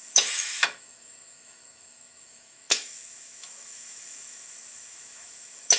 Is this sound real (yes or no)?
no